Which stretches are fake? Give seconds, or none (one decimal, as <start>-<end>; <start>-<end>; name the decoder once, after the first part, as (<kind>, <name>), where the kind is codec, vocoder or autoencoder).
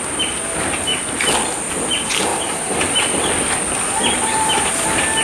0.0-0.9 (vocoder, BigVGAN v2); 1.9-2.3; 2.8-5.2